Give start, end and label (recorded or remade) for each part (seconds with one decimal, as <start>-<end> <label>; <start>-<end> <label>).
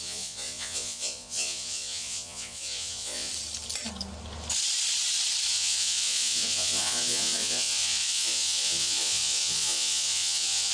0.0-3.3 remade; 3.3-5.5 recorded; 5.5-10.7 remade